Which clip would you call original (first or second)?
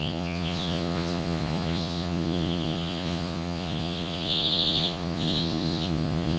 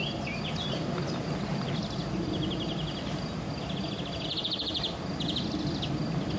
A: second